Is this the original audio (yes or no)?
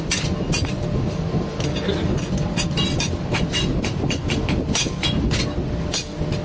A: yes